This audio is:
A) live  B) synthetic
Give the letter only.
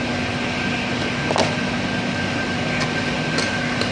A